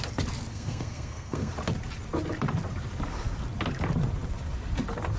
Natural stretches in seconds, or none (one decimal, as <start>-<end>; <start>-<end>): 0.0-0.5; 1.5-5.2

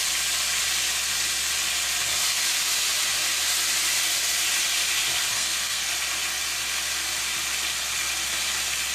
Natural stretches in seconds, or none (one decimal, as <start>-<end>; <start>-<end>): 0.0-5.3; 5.9-8.9

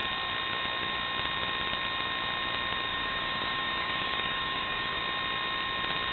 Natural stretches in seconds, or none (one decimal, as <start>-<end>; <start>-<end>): 0.0-2.9; 5.0-6.1